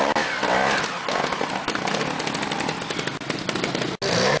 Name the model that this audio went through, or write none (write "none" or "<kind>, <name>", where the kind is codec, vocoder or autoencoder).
none